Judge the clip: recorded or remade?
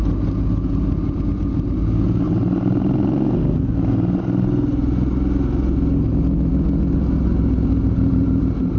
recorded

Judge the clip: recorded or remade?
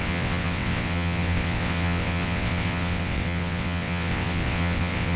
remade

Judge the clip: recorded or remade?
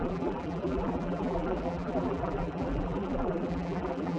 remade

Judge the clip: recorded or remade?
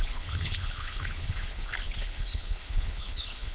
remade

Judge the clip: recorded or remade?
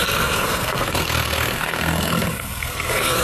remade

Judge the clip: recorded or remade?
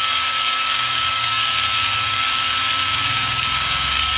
remade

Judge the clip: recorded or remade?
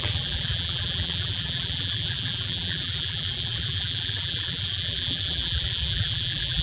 remade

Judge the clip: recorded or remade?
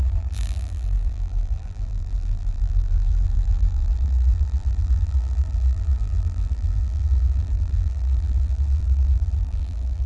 remade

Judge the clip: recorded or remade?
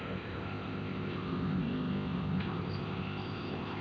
remade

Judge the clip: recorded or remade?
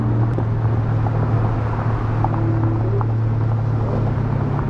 recorded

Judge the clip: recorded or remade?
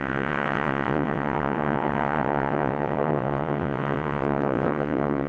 remade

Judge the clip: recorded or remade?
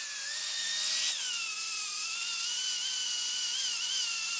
remade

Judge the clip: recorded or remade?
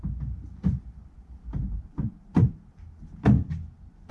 recorded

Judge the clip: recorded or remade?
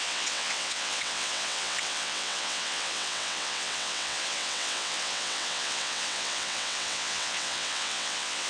remade